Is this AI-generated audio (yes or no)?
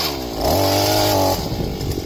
no